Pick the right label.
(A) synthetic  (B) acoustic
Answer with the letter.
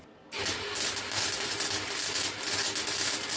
B